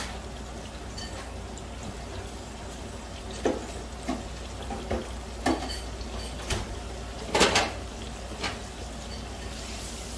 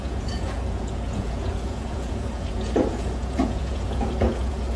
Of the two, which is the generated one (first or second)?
second